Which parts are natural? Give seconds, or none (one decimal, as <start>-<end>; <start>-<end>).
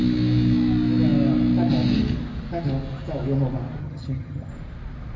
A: 0.0-3.8; 4.5-5.2